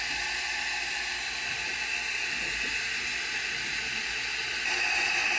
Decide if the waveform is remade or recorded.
recorded